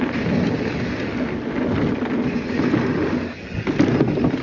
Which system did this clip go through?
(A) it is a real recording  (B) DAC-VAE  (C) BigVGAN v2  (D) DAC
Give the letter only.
A